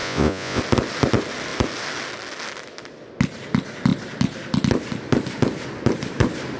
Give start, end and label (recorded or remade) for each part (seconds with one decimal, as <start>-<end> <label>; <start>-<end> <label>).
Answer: 0.0-0.6 remade; 0.6-6.6 recorded